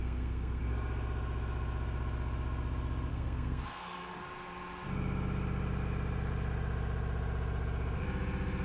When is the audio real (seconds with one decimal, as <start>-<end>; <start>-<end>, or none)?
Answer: 0.6-3.1; 4.2-8.6